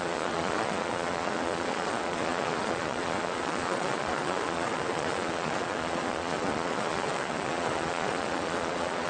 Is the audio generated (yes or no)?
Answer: yes